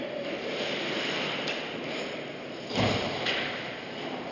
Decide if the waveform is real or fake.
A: real